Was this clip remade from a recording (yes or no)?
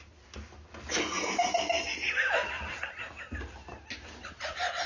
no